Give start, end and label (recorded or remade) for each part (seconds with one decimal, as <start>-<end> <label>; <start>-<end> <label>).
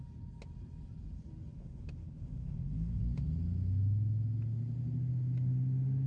0.0-1.5 recorded; 1.5-3.0 remade; 3.0-6.1 recorded